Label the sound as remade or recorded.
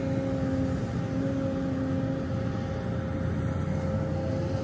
recorded